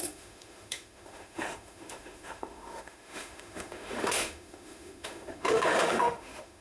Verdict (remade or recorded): remade